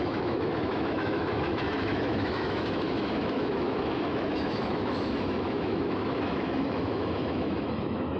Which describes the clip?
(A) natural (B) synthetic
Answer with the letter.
B